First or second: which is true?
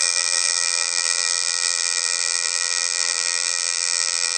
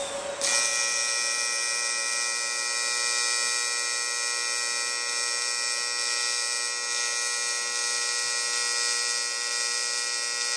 second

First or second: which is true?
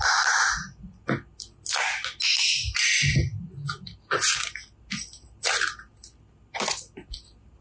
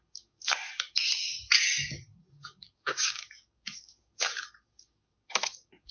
first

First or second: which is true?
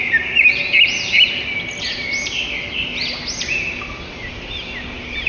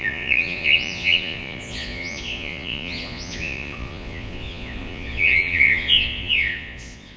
first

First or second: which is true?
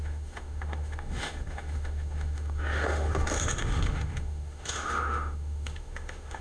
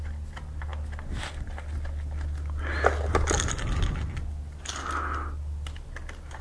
second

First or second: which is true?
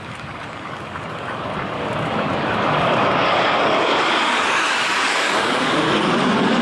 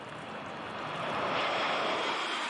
second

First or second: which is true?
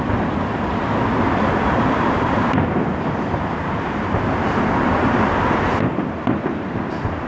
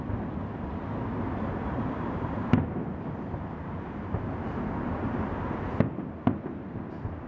second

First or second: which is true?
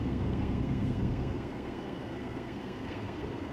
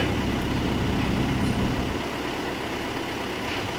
second